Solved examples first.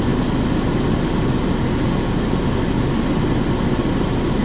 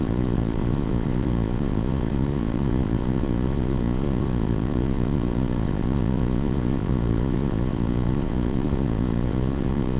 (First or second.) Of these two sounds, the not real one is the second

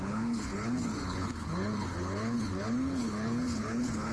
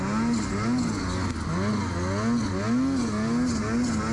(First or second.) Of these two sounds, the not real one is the first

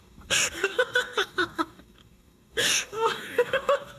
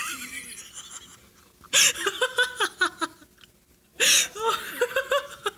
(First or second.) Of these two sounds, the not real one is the first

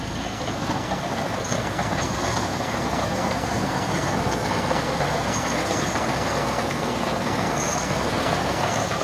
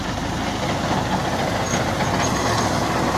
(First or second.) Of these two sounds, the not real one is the first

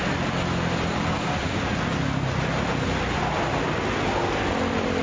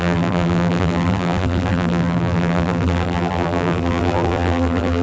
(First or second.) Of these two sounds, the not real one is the second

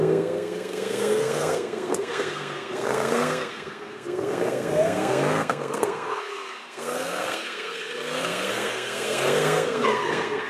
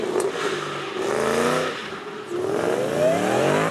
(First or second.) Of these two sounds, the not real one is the first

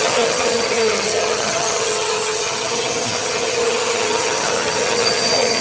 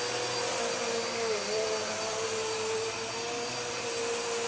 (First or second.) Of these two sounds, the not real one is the first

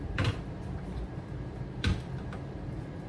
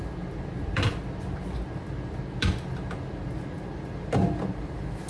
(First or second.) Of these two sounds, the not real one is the first